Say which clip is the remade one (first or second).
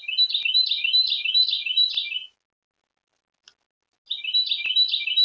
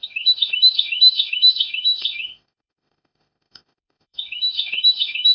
second